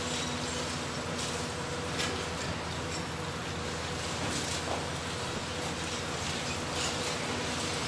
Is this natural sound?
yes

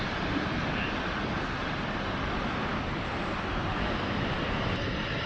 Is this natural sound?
yes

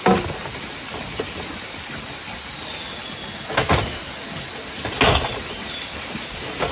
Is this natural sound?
yes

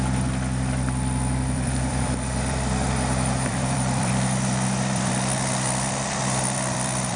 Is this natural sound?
no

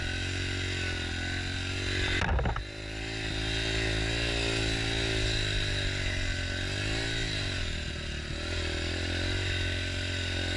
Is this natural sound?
yes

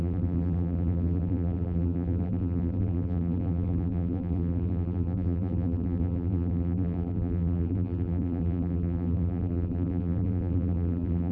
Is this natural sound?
no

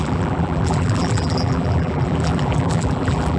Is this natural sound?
no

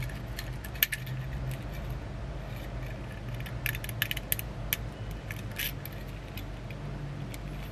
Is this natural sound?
yes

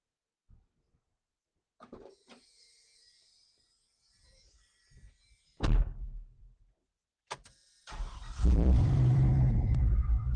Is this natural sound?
no